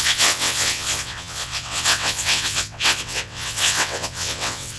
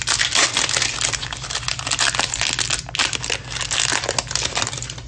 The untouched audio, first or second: second